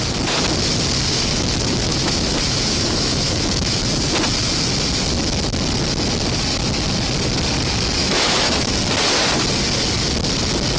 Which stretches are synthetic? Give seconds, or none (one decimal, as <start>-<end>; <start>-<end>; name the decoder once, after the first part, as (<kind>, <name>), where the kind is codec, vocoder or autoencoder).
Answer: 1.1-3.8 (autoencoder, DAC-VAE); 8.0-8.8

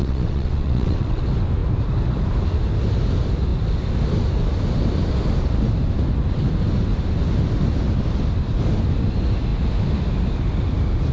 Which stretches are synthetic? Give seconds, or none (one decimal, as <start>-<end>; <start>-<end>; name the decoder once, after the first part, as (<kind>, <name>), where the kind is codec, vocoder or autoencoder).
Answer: 0.0-1.2 (vocoder, WaveNeXt)

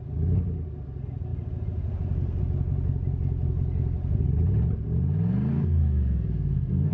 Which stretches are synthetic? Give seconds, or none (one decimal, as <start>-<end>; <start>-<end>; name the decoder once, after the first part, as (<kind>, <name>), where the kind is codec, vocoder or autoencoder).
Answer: 5.5-6.9 (codec, SNAC)